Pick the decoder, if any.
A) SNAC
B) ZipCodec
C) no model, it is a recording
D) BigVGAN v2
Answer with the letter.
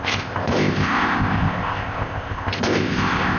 B